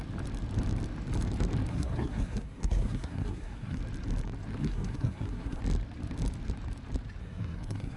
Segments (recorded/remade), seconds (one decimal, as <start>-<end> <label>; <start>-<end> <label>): 0.0-1.7 recorded; 1.7-3.8 remade; 3.8-4.6 recorded; 4.6-5.6 remade; 5.6-7.2 recorded; 7.2-8.0 remade